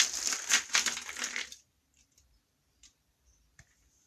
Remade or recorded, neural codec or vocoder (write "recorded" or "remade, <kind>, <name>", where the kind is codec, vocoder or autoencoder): recorded